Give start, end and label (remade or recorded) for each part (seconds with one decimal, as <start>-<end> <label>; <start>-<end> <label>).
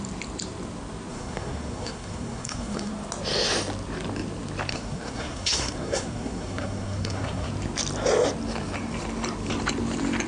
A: 0.0-1.1 recorded; 1.1-2.9 remade; 2.9-4.7 recorded; 4.7-7.5 remade; 7.5-10.3 recorded